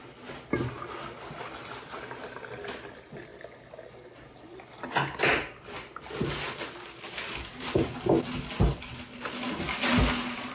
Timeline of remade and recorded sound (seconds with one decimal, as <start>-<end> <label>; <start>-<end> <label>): 0.0-10.5 recorded